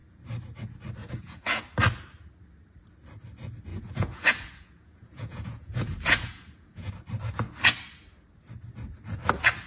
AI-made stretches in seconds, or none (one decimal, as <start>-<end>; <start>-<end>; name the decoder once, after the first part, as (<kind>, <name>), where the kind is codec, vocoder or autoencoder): 1.0-1.6 (vocoder, Vocos); 3.7-6.9

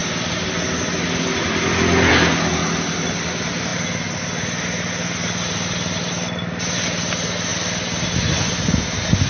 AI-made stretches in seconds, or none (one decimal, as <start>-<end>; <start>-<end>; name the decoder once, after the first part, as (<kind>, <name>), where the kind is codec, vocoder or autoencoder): none